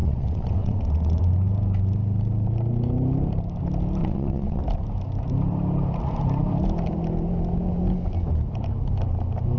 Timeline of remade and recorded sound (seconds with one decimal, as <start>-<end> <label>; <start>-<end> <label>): 0.0-1.2 remade; 1.2-4.0 recorded; 4.0-4.6 remade; 4.6-9.6 recorded